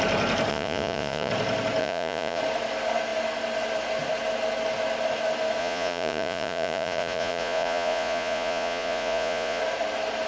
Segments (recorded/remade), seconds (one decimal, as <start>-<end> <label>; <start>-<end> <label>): 0.0-0.5 recorded; 0.5-1.3 remade; 1.3-1.8 recorded; 1.8-2.4 remade; 2.4-5.6 recorded; 5.6-9.6 remade; 9.6-10.3 recorded